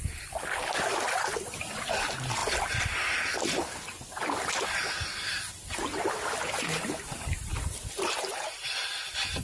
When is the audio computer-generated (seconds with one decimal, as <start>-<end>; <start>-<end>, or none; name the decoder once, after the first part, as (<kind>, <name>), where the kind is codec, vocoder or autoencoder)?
none